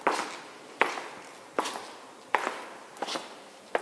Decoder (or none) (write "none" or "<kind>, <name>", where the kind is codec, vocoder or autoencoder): none